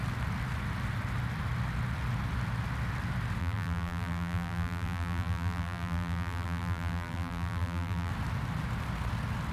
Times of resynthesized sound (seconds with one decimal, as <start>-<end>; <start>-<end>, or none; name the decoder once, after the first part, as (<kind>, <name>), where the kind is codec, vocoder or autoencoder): 3.4-8.1 (vocoder, BigVGAN v2)